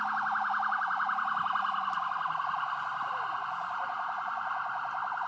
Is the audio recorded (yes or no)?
yes